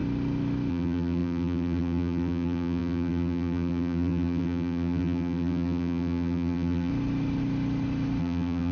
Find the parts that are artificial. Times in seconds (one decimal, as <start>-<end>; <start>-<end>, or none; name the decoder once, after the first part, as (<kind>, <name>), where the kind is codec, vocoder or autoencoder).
0.7-6.9 (vocoder, BigVGAN v2); 8.2-8.7